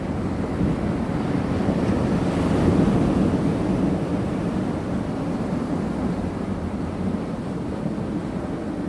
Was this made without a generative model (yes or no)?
yes